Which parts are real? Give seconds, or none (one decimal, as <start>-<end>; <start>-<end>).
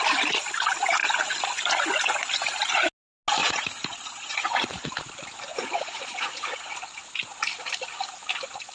0.0-3.4; 4.9-5.5; 6.8-8.7